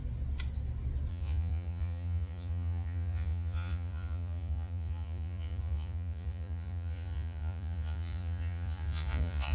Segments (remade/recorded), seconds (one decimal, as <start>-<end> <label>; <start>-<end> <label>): 0.0-1.1 recorded; 1.1-9.5 remade